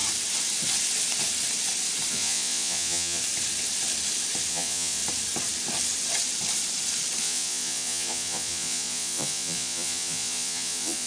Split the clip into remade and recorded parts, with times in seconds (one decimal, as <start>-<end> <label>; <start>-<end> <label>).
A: 0.0-2.1 recorded; 2.1-3.2 remade; 3.2-4.5 recorded; 4.5-5.0 remade; 5.0-7.2 recorded; 7.2-11.1 remade